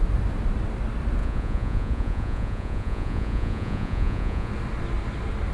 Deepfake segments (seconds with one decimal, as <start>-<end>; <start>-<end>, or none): 1.2-4.5